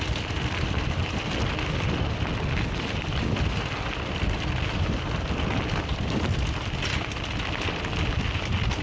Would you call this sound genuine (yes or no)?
yes